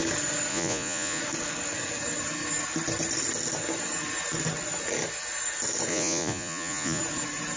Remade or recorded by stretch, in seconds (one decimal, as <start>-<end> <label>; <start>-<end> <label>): 0.0-0.5 recorded; 0.5-1.2 remade; 1.2-5.9 recorded; 5.9-7.0 remade; 7.0-7.6 recorded